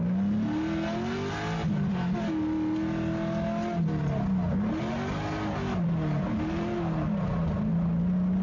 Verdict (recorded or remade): recorded